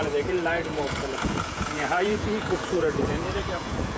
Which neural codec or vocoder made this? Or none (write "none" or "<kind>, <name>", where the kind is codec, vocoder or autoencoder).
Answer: vocoder, Vocos